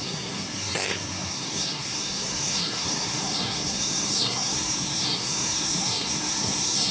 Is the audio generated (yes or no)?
yes